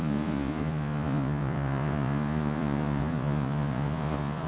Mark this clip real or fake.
fake